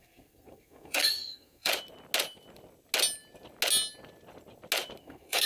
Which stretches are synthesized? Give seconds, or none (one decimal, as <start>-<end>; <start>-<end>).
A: 0.0-1.7; 5.0-5.5